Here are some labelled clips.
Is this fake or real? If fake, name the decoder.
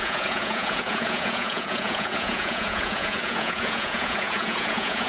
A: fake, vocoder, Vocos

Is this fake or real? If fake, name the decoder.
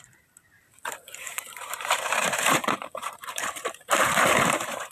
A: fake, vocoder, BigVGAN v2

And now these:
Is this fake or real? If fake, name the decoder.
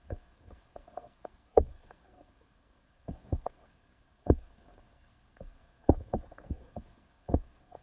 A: fake, codec, SNAC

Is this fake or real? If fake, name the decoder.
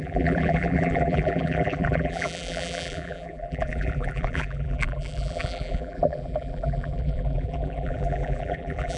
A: fake, vocoder, BigVGAN v2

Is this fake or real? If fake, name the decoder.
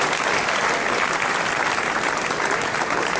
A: real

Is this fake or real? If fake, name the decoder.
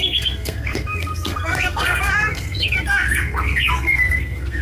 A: fake, codec, SNAC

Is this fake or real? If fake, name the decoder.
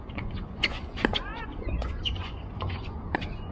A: fake, vocoder, Vocos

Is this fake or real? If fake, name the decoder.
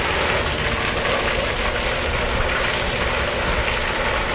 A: real